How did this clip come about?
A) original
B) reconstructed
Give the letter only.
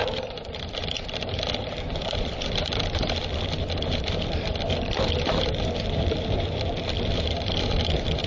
B